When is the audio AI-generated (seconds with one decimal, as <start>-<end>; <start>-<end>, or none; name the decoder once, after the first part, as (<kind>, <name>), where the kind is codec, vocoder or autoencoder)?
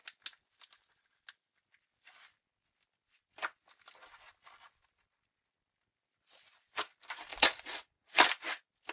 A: 7.3-8.2 (vocoder, Vocos)